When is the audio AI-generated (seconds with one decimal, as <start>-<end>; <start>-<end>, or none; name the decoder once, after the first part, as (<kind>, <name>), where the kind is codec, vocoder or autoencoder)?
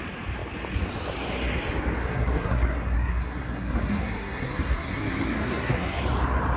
2.0-6.0 (codec, SNAC)